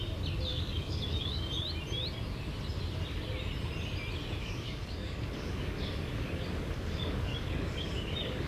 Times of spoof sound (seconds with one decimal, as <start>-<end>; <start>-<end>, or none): 0.5-1.6; 4.4-8.5